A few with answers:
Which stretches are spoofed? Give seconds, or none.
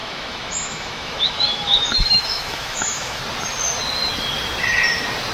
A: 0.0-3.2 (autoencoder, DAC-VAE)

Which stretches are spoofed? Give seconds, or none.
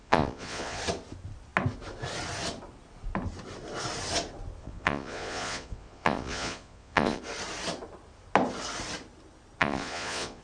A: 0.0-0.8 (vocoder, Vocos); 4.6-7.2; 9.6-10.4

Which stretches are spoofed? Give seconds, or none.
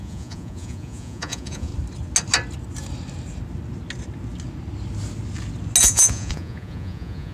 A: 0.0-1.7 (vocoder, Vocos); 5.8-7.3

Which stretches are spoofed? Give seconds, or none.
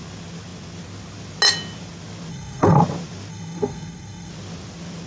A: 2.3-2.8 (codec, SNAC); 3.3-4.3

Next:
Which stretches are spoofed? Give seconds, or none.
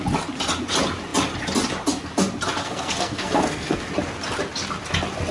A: 2.6-3.8 (codec, SNAC)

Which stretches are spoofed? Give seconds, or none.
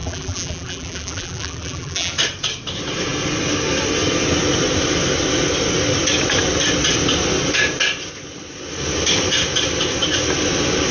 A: 0.0-2.1 (vocoder, BigVGAN v2)